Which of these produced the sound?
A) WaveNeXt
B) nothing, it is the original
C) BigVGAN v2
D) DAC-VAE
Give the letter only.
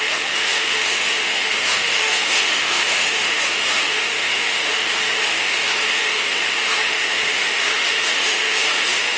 D